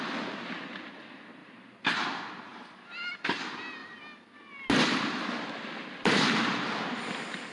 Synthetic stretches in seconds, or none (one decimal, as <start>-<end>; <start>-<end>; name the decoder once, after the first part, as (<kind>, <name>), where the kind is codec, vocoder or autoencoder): none